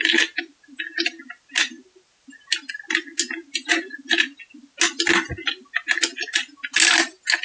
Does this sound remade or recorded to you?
recorded